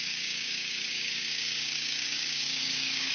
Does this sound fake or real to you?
fake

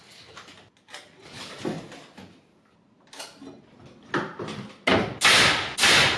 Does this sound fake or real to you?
real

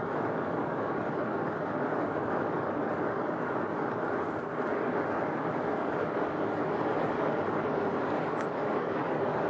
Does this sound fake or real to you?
fake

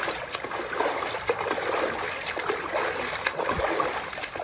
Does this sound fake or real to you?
real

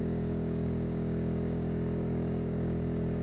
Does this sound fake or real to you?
fake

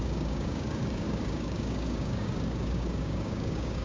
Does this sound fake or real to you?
fake